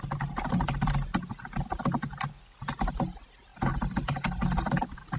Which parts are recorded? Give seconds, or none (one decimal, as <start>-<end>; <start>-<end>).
0.0-3.5